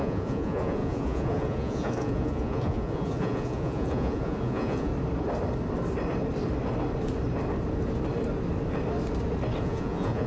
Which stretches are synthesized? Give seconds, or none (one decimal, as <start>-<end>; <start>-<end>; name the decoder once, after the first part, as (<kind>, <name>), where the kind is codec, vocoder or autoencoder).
0.0-4.9 (vocoder, Vocos); 9.6-10.3